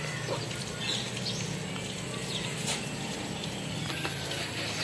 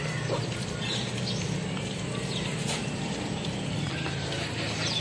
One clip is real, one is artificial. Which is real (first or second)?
first